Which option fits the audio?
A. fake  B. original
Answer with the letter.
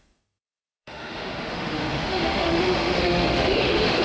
A